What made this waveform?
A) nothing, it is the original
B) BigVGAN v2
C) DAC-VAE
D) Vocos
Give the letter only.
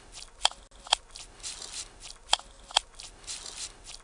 A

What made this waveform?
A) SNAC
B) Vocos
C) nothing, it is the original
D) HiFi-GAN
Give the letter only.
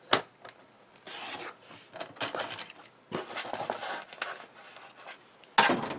C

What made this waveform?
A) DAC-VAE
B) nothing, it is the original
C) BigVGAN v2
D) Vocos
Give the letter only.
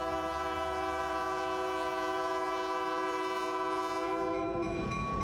D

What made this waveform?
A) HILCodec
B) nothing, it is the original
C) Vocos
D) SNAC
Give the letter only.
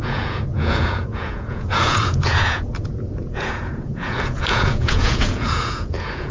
C